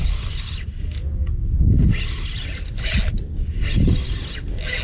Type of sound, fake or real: real